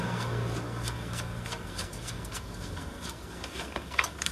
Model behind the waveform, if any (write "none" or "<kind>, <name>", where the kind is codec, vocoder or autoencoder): codec, SNAC